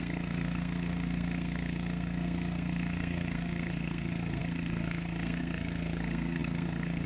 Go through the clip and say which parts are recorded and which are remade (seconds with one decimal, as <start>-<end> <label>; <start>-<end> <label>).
0.0-7.1 remade